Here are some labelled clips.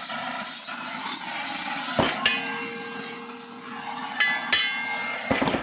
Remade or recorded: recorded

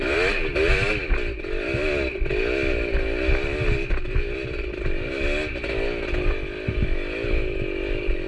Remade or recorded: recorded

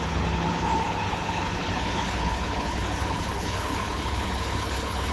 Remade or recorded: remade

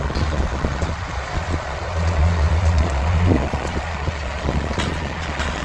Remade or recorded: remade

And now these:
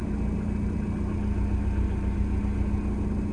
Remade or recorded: recorded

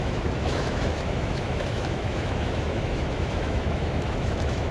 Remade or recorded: remade